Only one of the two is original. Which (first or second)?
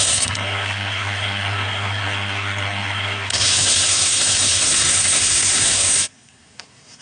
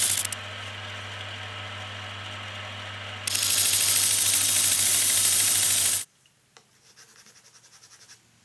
second